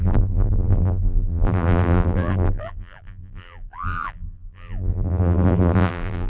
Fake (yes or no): yes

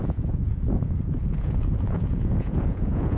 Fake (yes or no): yes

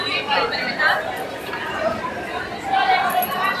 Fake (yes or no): no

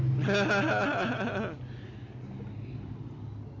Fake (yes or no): no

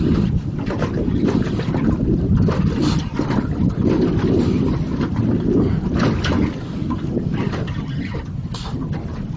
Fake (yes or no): no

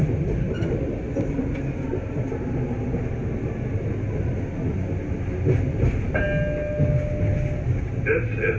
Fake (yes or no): no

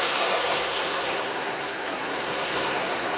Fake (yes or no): yes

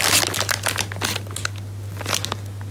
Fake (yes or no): no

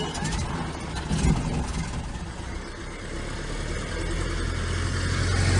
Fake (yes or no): no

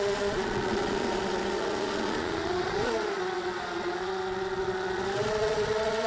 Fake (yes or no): yes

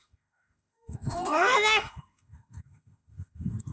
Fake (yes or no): yes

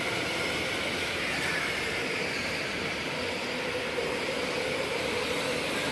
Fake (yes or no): no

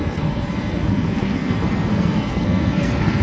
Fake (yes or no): yes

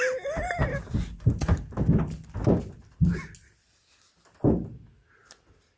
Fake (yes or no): no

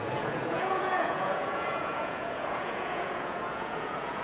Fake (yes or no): yes